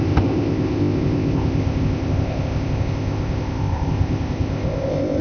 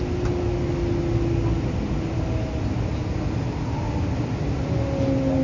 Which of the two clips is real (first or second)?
second